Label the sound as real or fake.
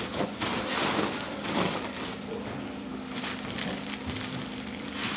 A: real